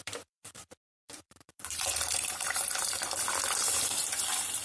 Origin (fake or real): fake